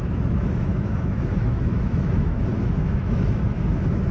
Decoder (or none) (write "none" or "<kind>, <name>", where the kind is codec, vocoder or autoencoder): autoencoder, DAC-VAE